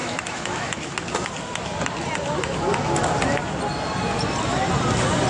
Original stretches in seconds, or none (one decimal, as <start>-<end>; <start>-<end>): 0.9-5.3